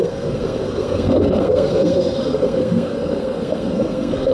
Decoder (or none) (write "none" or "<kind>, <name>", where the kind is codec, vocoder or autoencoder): codec, SNAC